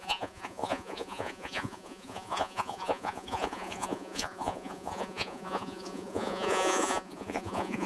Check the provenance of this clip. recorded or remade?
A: remade